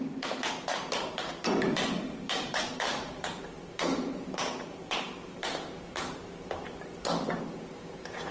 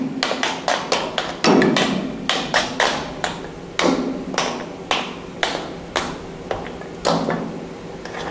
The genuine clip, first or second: second